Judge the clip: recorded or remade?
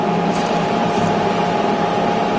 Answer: remade